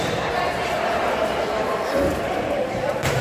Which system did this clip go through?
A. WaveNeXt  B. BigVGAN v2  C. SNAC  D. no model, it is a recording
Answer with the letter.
B